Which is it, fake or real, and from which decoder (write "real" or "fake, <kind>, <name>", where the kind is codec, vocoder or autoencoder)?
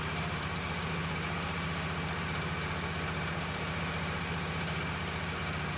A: real